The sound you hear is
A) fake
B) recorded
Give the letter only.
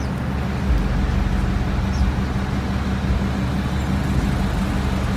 B